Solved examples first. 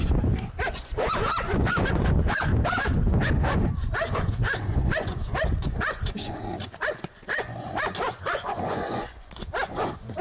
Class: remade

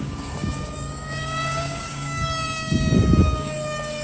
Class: remade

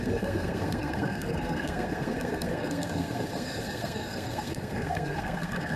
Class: remade